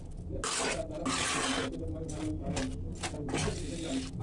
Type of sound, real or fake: real